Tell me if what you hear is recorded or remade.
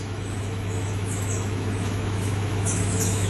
remade